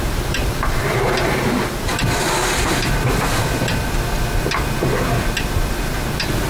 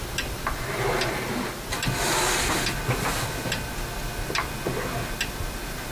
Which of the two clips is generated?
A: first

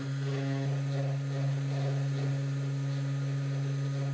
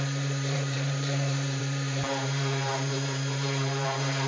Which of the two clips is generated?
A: second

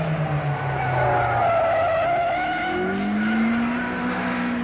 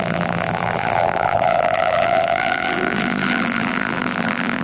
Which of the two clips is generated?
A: second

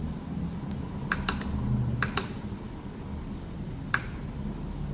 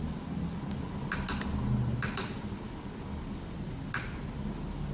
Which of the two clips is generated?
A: first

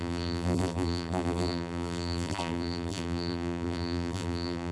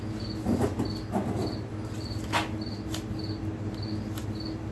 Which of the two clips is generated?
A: first